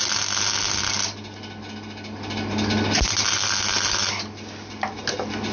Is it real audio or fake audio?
real